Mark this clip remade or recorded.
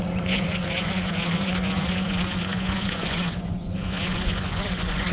remade